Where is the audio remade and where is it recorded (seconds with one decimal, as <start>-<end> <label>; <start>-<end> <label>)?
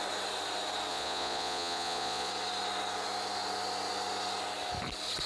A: 0.0-0.9 recorded; 0.9-2.3 remade; 2.3-5.3 recorded